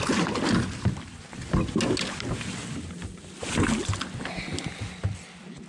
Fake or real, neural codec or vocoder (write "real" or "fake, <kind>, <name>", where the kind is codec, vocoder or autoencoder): real